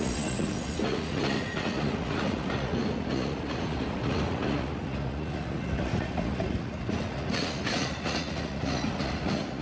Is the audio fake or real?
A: fake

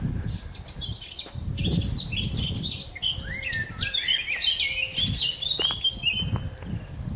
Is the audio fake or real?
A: real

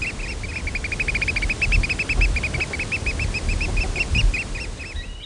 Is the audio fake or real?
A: real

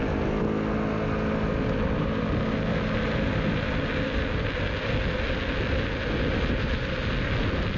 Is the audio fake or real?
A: real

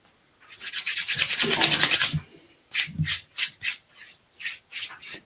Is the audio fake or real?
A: real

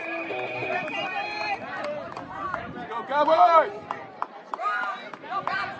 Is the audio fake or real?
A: real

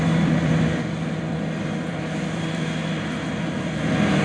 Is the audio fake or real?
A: fake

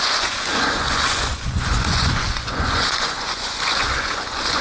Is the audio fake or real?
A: fake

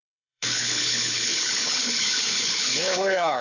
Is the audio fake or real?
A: fake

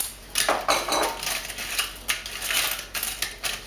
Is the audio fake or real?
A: real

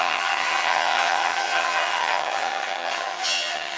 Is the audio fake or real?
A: fake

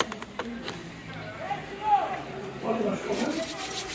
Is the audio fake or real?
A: real